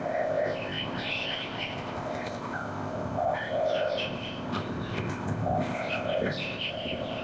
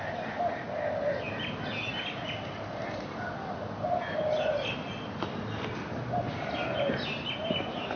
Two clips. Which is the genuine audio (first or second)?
second